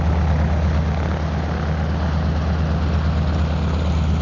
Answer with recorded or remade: recorded